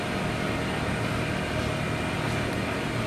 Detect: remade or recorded recorded